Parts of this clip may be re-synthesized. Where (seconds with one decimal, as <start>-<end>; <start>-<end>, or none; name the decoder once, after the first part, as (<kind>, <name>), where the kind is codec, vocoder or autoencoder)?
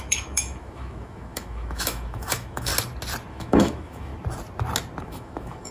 0.0-2.7 (autoencoder, DAC-VAE); 3.3-4.1; 5.0-5.7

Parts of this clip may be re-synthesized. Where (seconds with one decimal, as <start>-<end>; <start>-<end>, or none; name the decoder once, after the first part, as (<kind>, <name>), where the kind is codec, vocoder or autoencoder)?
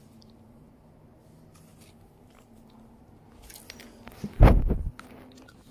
none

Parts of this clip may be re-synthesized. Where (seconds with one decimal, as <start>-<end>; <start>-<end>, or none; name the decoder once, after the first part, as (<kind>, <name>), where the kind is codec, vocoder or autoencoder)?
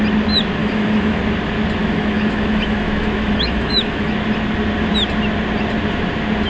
0.6-1.2 (autoencoder, DAC-VAE); 1.8-4.1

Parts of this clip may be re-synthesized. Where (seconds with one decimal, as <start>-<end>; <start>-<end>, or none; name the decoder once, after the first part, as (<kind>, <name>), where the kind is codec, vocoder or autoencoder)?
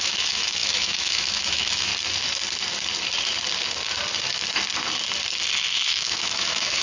0.0-1.9 (autoencoder, DAC-VAE); 5.7-6.8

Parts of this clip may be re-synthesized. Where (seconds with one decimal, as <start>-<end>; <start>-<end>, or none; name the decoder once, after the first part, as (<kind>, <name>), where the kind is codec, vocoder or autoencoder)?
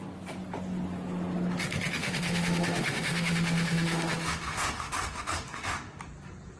2.0-6.0 (autoencoder, DAC-VAE)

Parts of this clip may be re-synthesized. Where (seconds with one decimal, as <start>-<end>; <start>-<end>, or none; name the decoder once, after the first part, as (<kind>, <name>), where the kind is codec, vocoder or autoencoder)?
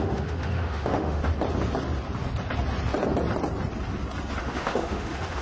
0.0-1.2 (autoencoder, DAC-VAE); 4.4-5.4